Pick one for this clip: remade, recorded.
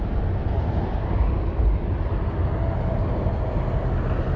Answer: recorded